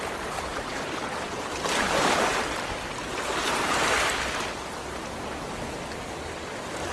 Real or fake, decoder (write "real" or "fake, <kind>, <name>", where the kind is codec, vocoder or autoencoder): real